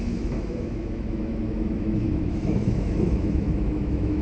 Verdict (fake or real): fake